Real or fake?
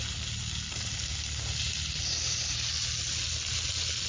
real